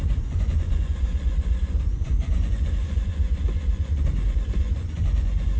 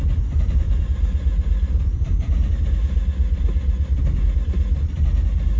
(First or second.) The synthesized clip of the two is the first